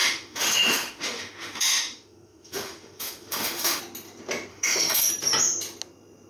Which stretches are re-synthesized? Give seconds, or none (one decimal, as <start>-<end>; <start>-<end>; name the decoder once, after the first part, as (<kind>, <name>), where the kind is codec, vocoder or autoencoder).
0.0-3.8 (autoencoder, DAC-VAE); 4.5-5.1